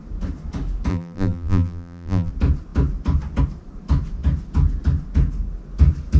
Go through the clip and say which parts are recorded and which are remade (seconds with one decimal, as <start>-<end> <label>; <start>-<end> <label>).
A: 0.0-0.9 recorded; 0.9-2.3 remade; 2.3-6.2 recorded